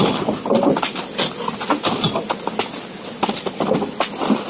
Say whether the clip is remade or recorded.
recorded